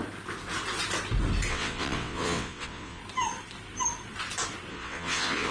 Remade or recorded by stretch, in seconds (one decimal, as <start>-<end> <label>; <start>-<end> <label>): 0.0-1.5 recorded; 1.5-3.0 remade; 3.0-4.7 recorded; 4.7-5.5 remade